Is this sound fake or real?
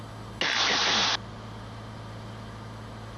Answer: real